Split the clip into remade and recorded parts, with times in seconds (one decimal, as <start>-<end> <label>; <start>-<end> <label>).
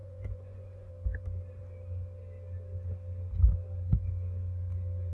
0.0-0.9 remade; 0.9-5.1 recorded